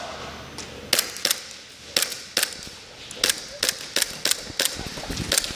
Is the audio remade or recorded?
recorded